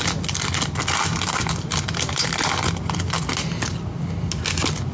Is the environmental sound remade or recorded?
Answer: recorded